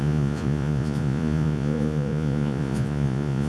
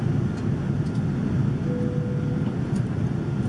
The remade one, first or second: first